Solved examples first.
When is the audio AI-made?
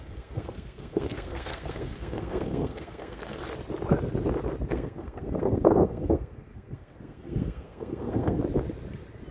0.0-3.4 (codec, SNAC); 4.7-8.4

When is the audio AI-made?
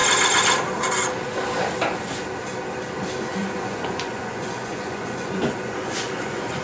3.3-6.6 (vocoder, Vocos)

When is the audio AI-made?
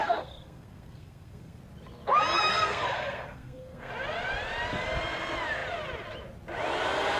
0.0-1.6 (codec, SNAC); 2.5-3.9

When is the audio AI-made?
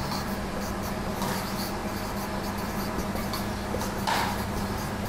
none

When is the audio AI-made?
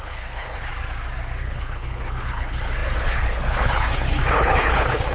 0.0-0.7 (codec, HILCodec); 1.4-5.1